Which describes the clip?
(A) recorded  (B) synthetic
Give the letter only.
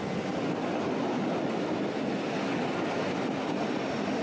A